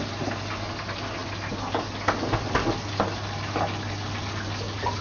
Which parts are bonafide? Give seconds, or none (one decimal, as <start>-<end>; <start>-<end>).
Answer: 0.0-5.0

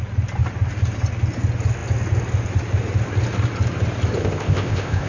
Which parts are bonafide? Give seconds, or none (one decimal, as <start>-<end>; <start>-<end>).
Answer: 0.0-4.2

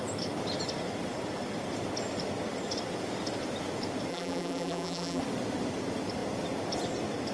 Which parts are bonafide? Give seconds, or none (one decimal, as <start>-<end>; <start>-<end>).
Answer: 0.0-4.1; 5.2-7.3

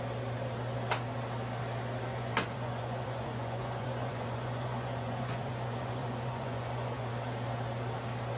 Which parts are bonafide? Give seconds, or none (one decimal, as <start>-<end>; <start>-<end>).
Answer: 0.0-2.1; 7.1-8.4